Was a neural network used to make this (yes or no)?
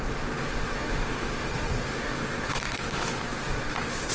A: yes